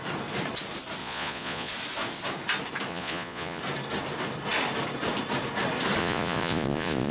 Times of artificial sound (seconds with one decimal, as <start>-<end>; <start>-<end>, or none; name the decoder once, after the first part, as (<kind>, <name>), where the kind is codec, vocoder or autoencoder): 1.0-1.7 (vocoder, Vocos); 2.9-3.6; 6.0-7.1